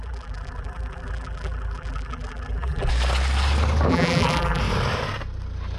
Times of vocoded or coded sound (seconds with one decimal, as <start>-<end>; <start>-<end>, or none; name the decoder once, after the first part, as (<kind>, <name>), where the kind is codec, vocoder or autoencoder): 0.0-2.9 (vocoder, BigVGAN v2); 3.9-4.6